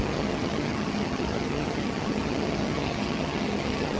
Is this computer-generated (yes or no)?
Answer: yes